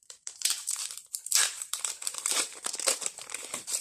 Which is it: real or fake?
fake